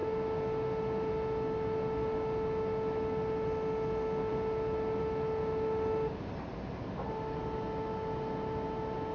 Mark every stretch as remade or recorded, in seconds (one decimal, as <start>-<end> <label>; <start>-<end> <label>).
0.0-9.1 recorded